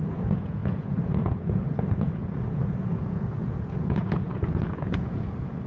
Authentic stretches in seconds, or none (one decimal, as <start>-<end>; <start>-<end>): none